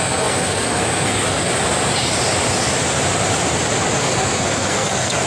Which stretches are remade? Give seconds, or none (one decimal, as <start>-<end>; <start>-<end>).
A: 0.0-1.5; 4.0-5.3